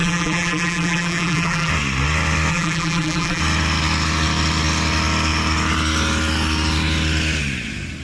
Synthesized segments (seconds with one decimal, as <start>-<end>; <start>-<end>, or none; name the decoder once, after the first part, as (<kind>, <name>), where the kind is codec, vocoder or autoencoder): 0.0-1.7 (vocoder, BigVGAN v2); 2.5-3.4

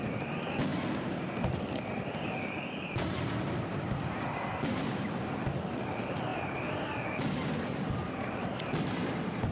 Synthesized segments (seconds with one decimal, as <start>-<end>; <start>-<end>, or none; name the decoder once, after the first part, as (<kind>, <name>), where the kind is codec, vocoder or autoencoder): 0.0-0.7 (vocoder, BigVGAN v2); 2.2-9.5

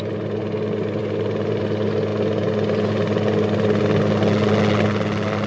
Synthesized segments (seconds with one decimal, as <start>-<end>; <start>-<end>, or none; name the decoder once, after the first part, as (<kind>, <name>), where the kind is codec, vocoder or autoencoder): 1.0-1.6 (vocoder, BigVGAN v2)

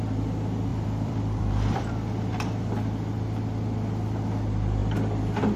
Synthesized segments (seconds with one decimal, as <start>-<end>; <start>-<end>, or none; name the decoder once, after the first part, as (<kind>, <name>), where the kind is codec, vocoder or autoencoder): 0.7-1.8 (vocoder, BigVGAN v2)